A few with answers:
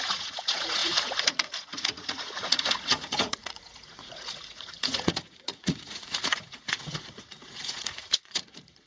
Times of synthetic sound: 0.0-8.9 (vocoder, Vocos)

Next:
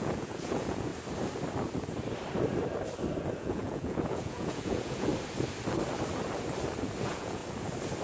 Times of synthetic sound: 0.0-0.9 (vocoder, Vocos); 3.3-5.1; 7.0-7.4

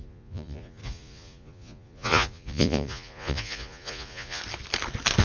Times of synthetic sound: 0.0-4.4 (vocoder, Vocos)

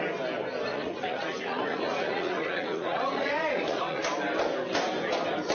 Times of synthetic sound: 0.7-4.0 (vocoder, Vocos)

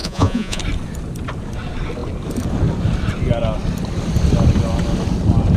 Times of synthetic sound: 0.0-0.6 (vocoder, Vocos)

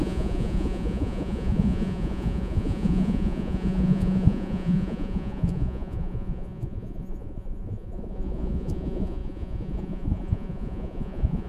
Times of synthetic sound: 0.0-11.5 (vocoder, Vocos)

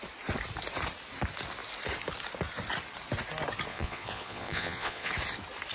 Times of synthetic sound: 3.7-5.1 (vocoder, Vocos)